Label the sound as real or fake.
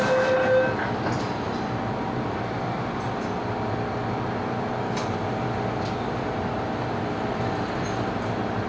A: real